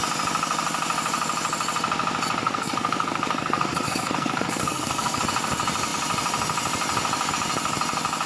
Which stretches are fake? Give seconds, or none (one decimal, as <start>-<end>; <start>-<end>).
2.4-5.2